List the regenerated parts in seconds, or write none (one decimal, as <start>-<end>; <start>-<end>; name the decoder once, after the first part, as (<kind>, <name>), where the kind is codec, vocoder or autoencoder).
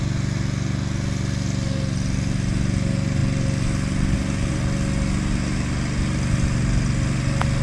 none